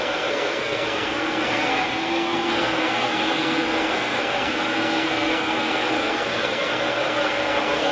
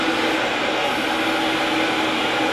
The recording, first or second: second